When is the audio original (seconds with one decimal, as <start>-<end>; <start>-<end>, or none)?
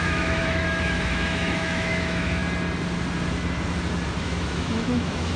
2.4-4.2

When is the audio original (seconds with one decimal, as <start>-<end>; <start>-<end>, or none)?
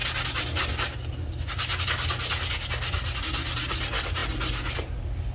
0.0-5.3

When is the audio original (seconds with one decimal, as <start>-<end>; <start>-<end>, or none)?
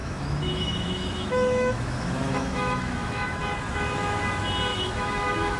3.4-4.7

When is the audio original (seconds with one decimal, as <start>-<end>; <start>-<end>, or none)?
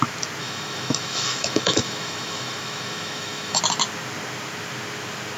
0.0-0.4; 3.6-5.4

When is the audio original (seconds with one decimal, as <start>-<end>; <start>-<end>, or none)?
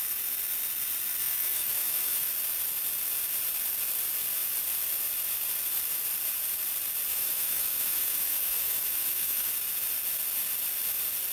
0.0-1.2; 2.3-7.1; 9.5-11.3